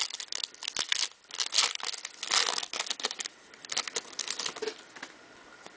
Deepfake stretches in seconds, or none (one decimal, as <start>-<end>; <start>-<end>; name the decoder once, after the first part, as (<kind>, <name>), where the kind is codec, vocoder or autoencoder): none